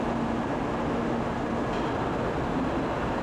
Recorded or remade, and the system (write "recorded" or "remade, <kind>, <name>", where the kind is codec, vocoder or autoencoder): recorded